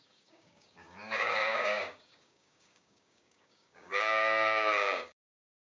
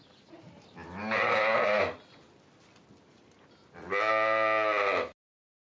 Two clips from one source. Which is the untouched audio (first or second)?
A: second